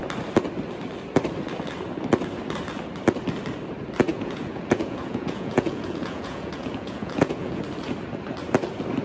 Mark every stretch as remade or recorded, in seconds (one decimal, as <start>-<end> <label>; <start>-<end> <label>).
0.0-4.1 recorded; 4.1-7.6 remade; 7.6-9.0 recorded